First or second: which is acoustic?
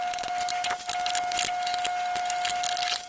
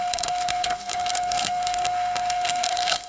first